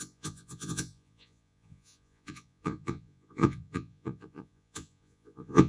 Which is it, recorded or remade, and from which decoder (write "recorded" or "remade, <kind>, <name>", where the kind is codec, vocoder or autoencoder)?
remade, vocoder, Vocos